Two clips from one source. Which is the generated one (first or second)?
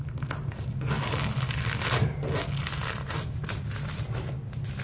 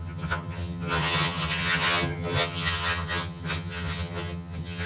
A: second